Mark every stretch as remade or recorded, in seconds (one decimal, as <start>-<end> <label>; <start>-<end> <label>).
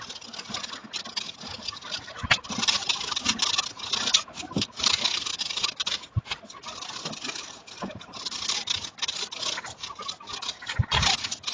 0.0-11.5 recorded